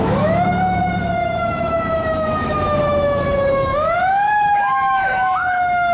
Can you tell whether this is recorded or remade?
remade